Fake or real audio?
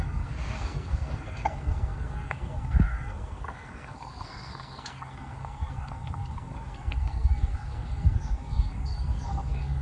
fake